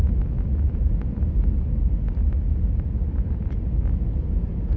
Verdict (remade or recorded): recorded